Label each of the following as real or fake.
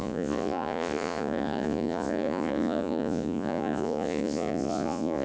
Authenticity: fake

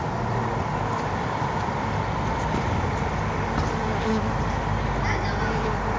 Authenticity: real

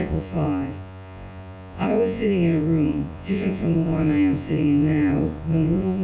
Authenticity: fake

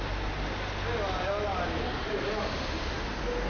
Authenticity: real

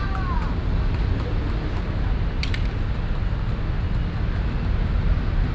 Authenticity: real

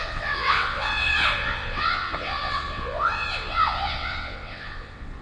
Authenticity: fake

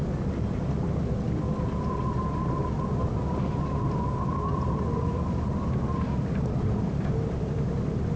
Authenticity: real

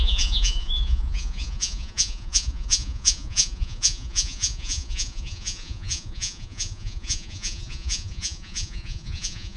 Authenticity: fake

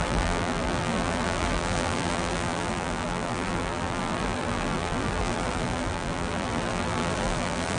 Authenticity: fake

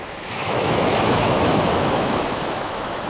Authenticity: fake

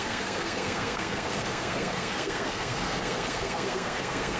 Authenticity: fake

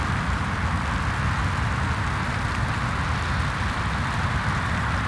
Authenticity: real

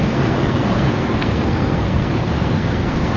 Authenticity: fake